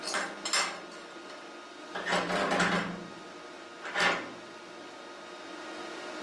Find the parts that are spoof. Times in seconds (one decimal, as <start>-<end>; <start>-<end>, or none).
none